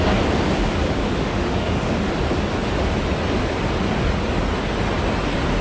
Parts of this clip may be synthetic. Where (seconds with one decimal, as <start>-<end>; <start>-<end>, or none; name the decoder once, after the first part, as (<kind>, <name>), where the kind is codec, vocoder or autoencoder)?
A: 1.0-2.1 (autoencoder, DAC-VAE)